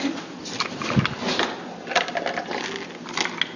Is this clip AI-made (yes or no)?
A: no